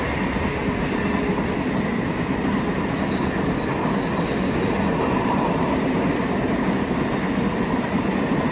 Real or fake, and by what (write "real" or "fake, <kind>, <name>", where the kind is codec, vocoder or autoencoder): real